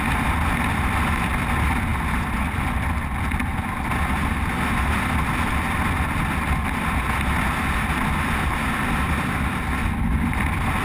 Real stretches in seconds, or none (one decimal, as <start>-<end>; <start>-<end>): 0.0-10.8